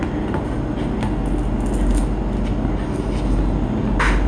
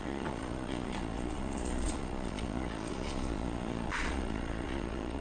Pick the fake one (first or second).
second